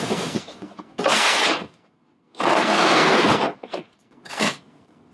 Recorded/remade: remade